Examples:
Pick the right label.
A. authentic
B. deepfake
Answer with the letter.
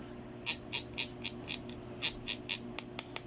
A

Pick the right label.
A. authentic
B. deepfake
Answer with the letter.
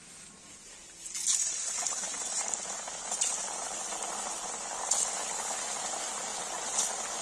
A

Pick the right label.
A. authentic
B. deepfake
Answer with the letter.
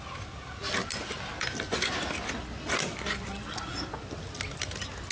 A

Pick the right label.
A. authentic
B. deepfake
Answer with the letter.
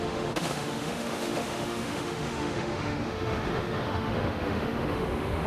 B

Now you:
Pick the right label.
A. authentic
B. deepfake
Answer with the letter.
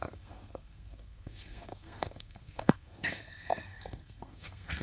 B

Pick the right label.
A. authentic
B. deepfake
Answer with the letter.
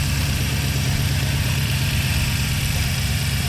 B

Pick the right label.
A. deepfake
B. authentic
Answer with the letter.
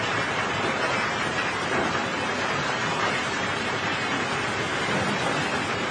A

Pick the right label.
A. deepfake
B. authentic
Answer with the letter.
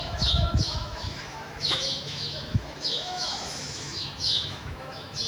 A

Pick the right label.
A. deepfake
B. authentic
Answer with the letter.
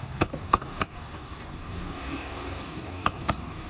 A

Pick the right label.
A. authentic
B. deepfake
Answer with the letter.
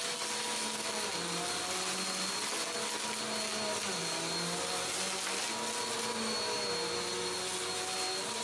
A